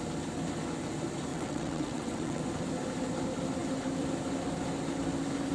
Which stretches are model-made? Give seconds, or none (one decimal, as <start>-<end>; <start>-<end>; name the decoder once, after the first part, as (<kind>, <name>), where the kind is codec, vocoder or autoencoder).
1.3-2.4 (vocoder, WaveNeXt)